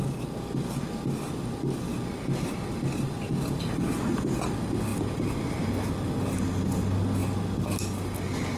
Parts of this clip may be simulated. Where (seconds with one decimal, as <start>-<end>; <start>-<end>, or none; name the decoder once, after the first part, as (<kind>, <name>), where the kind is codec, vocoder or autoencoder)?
none